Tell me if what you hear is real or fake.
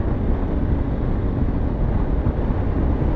real